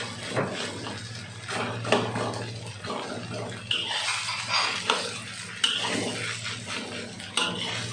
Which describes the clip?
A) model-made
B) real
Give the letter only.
B